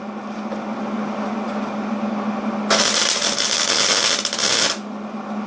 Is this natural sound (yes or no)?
yes